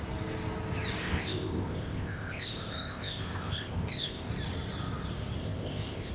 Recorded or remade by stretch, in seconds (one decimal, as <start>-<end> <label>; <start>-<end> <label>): 0.0-1.0 recorded; 1.0-4.3 remade; 4.3-5.4 recorded; 5.4-6.1 remade